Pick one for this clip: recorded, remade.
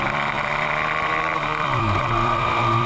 remade